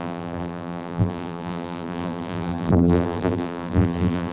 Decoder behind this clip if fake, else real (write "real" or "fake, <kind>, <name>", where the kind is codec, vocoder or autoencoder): fake, vocoder, BigVGAN v2